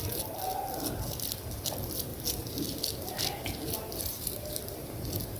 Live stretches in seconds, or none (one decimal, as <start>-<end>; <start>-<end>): 0.0-5.4